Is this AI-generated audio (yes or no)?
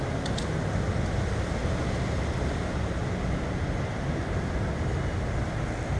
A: no